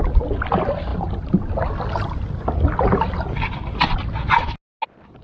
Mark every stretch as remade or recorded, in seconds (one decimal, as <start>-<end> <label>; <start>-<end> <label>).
0.0-5.2 recorded